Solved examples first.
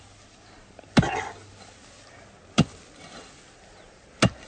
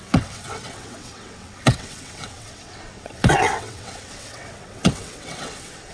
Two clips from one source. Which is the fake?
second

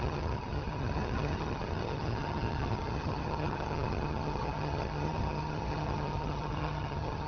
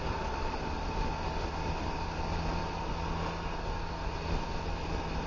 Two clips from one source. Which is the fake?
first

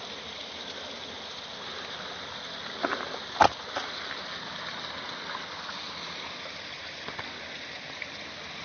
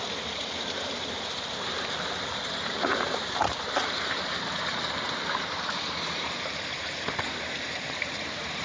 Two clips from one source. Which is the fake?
second